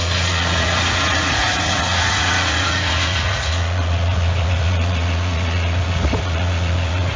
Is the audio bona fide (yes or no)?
no